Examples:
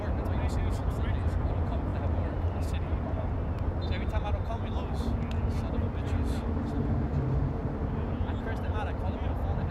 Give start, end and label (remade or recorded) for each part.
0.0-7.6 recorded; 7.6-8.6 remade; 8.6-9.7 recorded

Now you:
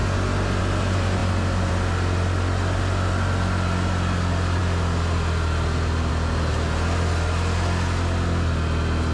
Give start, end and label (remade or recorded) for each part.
0.0-9.1 recorded

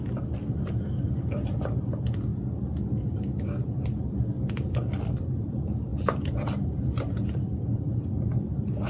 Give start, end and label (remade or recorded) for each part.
0.0-2.3 remade; 2.3-4.0 recorded; 4.0-8.9 remade

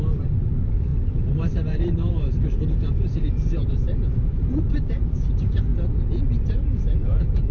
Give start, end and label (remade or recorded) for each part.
0.0-5.7 remade; 5.7-6.8 recorded; 6.8-7.5 remade

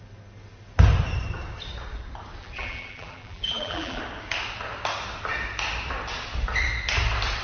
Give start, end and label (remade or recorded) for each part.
0.0-2.4 recorded; 2.4-4.0 remade; 4.0-7.4 recorded